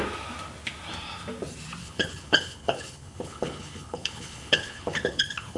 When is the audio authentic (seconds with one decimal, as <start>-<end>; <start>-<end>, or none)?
0.0-1.8